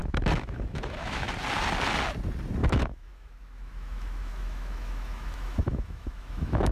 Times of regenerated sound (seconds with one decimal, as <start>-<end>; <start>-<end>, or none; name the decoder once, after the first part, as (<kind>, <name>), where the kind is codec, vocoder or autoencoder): 0.0-1.3 (autoencoder, DAC-VAE); 2.6-6.7